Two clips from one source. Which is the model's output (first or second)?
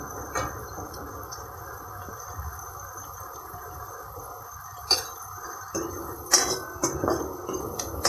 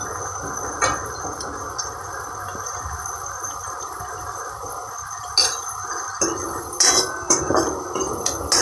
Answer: first